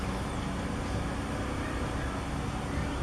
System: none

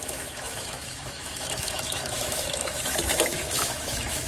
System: autoencoder, DAC-VAE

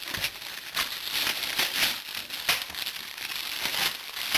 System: none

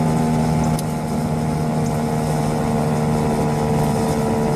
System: none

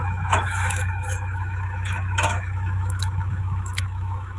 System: autoencoder, DAC-VAE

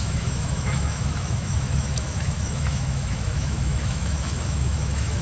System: autoencoder, DAC-VAE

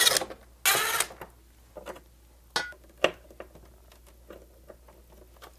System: none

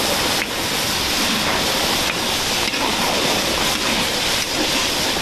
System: none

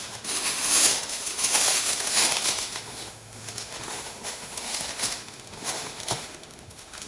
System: autoencoder, DAC-VAE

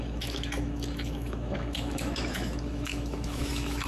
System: autoencoder, DAC-VAE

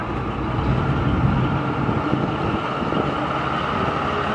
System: none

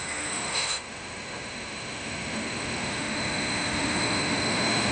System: autoencoder, DAC-VAE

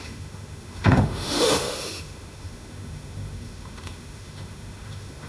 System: autoencoder, DAC-VAE